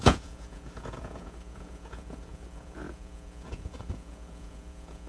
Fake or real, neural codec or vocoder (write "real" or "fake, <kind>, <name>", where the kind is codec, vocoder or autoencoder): fake, vocoder, Vocos